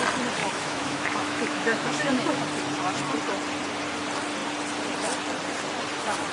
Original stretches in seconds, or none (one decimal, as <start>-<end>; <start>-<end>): 0.0-0.4; 2.4-6.3